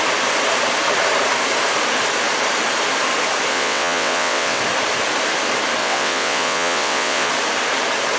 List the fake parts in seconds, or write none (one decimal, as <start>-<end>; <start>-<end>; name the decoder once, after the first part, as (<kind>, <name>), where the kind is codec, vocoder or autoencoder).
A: 3.5-4.6 (vocoder, WaveNeXt); 5.8-7.3